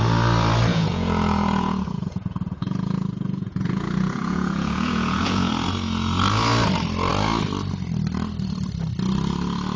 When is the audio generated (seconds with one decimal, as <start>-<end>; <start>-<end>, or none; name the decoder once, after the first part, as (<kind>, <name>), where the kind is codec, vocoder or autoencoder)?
0.7-5.5 (vocoder, Vocos)